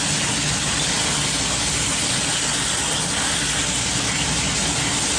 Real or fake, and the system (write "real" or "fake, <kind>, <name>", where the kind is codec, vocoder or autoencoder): real